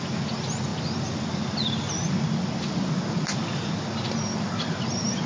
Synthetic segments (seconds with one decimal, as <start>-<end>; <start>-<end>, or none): none